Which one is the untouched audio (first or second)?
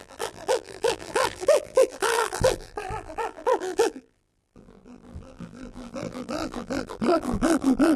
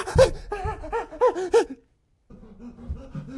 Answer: second